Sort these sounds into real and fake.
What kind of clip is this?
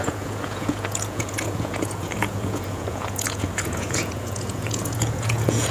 fake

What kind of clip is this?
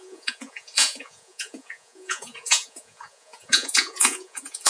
fake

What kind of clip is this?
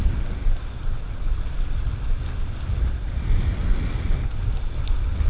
real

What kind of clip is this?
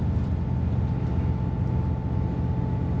real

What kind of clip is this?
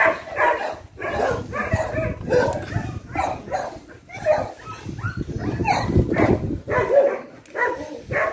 real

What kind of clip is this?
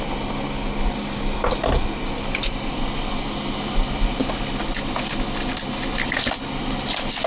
real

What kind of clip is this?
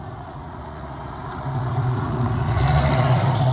fake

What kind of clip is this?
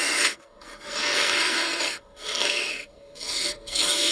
fake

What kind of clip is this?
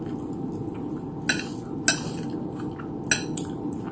real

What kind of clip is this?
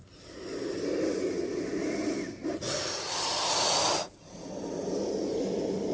real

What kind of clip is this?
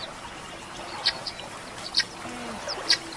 real